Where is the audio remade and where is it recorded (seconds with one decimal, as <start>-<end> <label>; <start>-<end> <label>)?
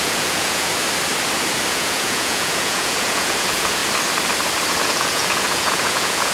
0.0-0.7 remade; 0.7-1.7 recorded; 1.7-3.8 remade; 3.8-4.7 recorded; 4.7-6.3 remade